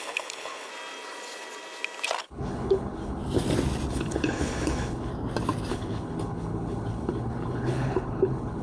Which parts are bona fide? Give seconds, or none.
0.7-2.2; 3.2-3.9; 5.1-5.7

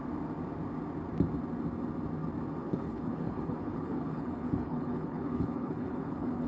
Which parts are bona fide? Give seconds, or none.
0.0-2.6